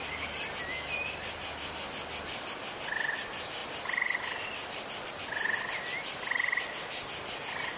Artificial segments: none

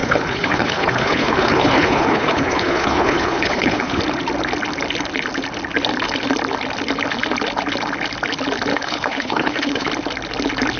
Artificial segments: 0.0-4.0 (codec, HILCodec); 8.7-9.9

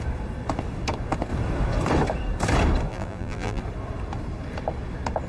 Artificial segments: 2.9-3.6 (vocoder, BigVGAN v2)

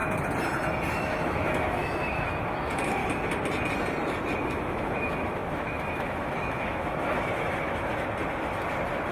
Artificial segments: 1.0-3.0 (autoencoder, DAC-VAE); 4.4-7.9

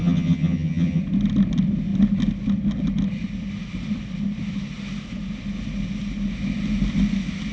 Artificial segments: 0.0-1.0 (vocoder, HiFi-GAN)

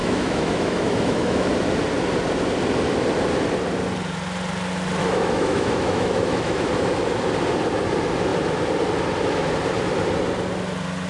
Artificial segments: 0.0-1.5 (autoencoder, DAC-VAE); 5.0-6.7

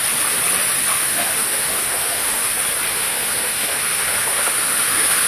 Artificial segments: 0.9-2.5 (autoencoder, DAC-VAE); 2.9-5.3

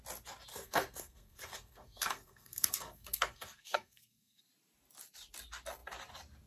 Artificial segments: 0.5-4.4 (codec, SNAC)